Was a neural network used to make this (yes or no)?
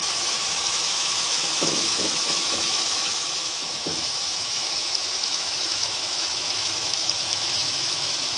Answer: yes